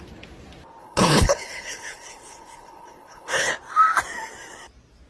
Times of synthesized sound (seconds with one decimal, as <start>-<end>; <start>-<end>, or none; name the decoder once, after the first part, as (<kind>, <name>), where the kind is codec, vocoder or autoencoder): 0.8-3.5 (codec, HILCodec)